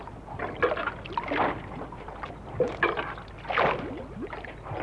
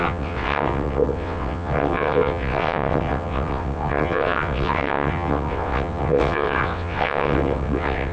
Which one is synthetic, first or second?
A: second